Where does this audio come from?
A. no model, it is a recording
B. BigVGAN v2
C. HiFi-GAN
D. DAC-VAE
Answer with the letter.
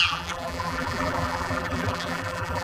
B